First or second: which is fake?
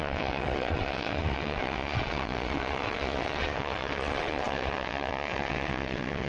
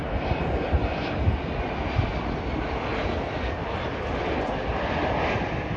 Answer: first